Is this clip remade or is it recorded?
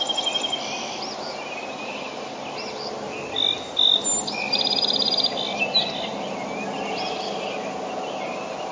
recorded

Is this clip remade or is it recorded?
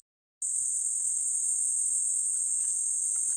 recorded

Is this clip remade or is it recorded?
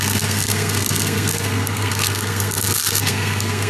remade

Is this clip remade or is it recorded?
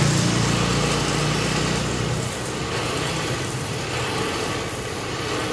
recorded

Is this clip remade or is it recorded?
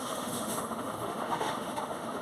remade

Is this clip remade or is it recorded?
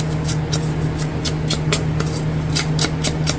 recorded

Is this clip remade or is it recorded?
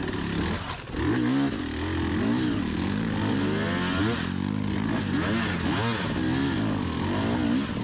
recorded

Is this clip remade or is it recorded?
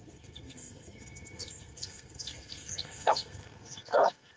remade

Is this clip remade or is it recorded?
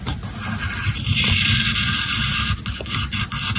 recorded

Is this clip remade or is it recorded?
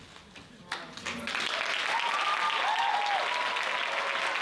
recorded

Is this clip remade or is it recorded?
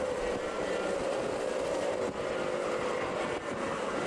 recorded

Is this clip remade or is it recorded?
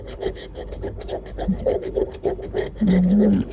remade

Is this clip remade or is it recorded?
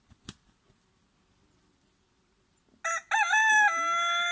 recorded